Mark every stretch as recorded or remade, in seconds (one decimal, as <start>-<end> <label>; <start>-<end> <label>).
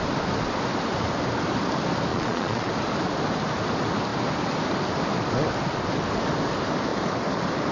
0.0-2.1 recorded; 2.1-2.7 remade; 2.7-7.7 recorded